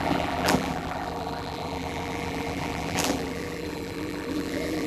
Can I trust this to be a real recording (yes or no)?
no